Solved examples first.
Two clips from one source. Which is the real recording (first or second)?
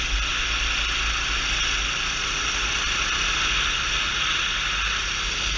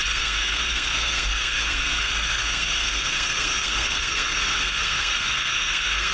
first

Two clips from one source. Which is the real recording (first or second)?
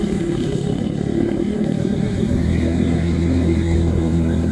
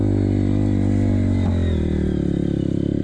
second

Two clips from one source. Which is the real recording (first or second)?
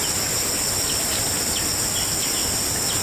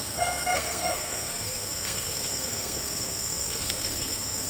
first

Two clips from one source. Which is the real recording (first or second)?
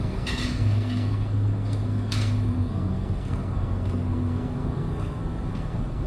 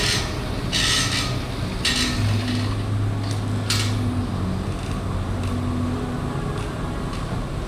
second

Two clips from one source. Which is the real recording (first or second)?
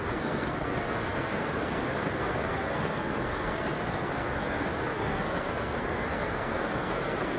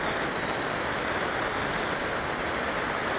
second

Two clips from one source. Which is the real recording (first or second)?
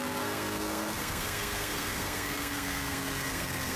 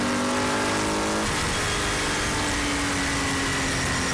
second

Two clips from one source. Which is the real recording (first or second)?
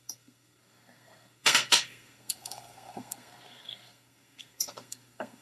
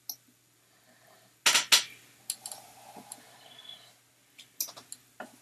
second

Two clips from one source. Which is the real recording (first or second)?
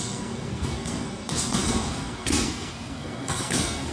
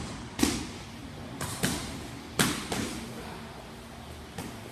second